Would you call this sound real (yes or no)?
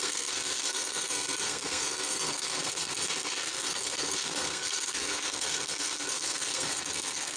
no